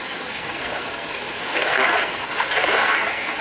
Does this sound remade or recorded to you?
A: remade